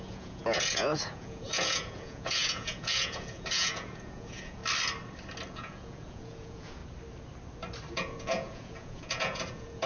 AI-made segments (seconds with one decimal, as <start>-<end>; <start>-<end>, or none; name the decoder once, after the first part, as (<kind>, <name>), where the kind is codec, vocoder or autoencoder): 0.0-4.6 (vocoder, Vocos); 5.5-6.8; 7.9-9.9